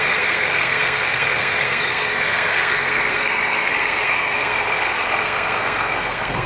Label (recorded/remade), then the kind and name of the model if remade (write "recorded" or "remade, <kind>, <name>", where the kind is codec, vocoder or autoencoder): remade, codec, SNAC